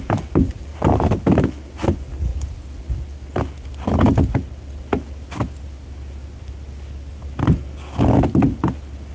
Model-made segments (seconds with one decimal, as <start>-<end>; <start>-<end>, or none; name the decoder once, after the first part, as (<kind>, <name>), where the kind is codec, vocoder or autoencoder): 0.7-1.5 (vocoder, BigVGAN v2)